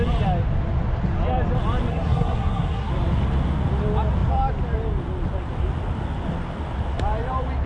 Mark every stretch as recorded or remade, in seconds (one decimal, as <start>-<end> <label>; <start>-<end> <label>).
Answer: 0.0-1.9 recorded; 1.9-2.9 remade; 2.9-7.7 recorded

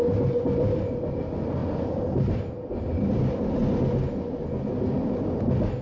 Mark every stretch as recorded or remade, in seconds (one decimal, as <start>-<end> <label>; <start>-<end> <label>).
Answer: 0.0-5.8 recorded

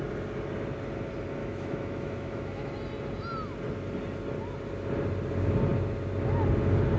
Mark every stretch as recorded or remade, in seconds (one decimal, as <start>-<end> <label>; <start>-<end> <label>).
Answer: 0.0-1.4 recorded; 1.4-2.7 remade; 2.7-7.0 recorded

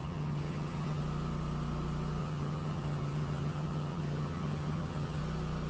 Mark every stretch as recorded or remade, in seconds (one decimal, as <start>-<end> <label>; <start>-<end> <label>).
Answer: 0.0-1.0 remade; 1.0-2.2 recorded; 2.2-5.2 remade; 5.2-5.7 recorded

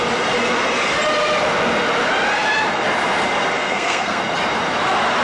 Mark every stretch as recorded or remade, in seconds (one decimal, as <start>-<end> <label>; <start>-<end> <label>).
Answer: 0.0-3.6 recorded; 3.6-4.2 remade; 4.2-5.2 recorded